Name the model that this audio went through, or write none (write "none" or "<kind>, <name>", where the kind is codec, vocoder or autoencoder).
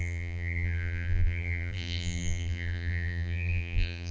vocoder, BigVGAN v2